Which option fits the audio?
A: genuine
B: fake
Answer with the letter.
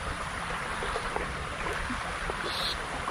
A